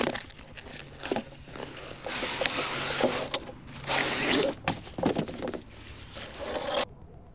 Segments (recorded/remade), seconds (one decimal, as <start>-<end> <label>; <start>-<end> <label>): 0.0-0.7 recorded; 0.7-1.2 remade; 1.2-1.6 recorded; 1.6-2.9 remade; 2.9-4.0 recorded; 4.0-4.5 remade; 4.5-7.3 recorded

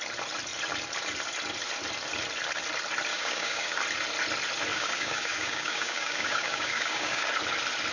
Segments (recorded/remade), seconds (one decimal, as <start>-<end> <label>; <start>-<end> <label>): 0.0-3.1 recorded; 3.1-3.8 remade; 3.8-4.7 recorded; 4.7-7.3 remade; 7.3-7.9 recorded